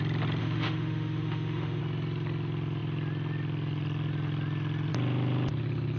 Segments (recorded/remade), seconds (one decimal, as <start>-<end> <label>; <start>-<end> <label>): 0.0-0.4 recorded; 0.4-1.8 remade; 1.8-6.0 recorded